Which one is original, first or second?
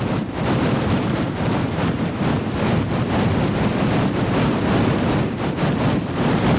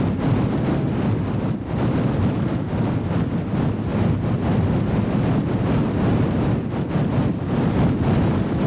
second